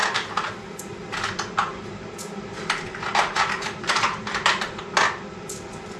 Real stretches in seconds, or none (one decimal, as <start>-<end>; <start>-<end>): 0.8-1.6; 4.8-6.0